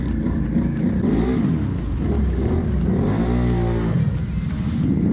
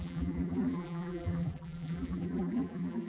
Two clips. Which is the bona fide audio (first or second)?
first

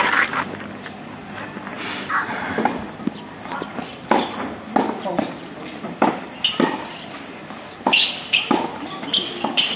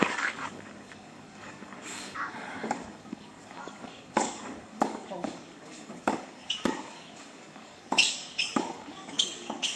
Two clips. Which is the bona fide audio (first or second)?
first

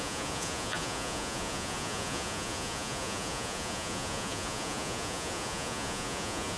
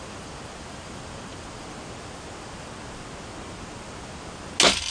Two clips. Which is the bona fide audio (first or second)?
second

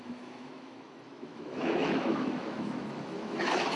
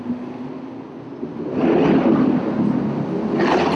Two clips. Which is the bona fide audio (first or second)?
second